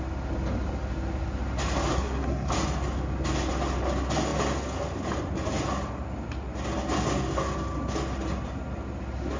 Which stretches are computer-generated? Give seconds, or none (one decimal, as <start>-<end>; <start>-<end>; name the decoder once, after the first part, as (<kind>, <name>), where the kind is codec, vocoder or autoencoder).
1.9-2.5 (codec, SNAC)